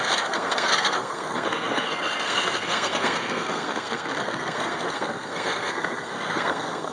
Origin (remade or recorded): remade